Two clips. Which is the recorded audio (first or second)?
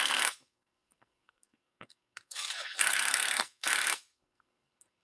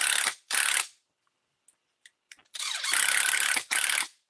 second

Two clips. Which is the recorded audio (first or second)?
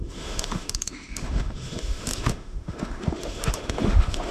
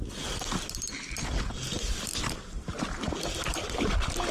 second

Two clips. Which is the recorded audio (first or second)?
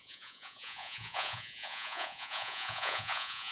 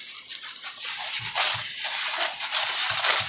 second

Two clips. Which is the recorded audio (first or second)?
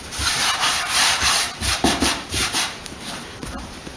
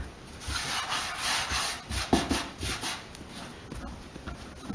second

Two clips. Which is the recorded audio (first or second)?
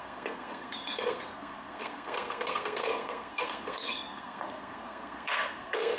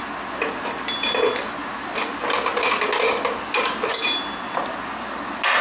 second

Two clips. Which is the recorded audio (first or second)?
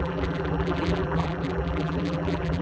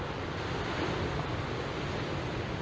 second